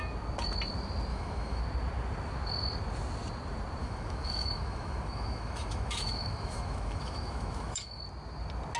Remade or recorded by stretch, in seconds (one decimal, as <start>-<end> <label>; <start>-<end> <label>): 0.0-1.1 recorded; 1.1-1.6 remade; 1.6-3.8 recorded; 3.8-8.0 remade; 8.0-8.8 recorded